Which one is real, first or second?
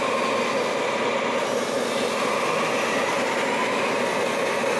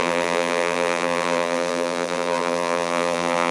first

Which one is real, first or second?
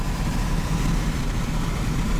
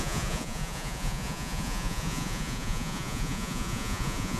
first